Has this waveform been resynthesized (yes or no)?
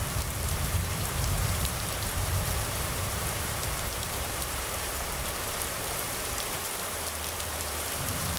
yes